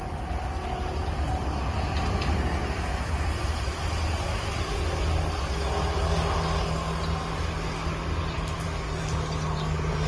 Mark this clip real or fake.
real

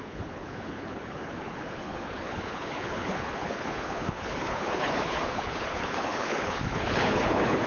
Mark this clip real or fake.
fake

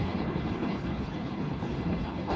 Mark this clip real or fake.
fake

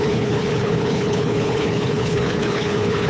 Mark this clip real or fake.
fake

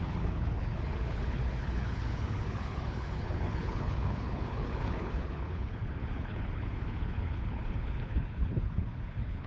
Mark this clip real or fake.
fake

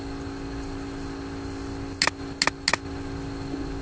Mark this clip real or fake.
real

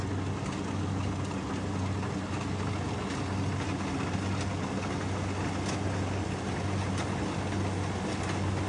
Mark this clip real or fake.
real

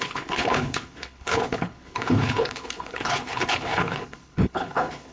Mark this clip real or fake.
fake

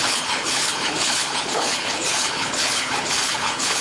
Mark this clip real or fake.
fake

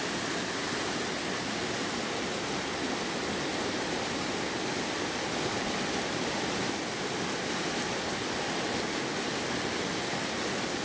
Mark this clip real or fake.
real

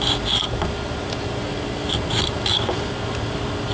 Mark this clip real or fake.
real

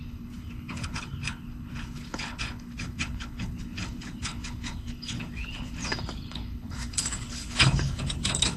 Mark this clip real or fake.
fake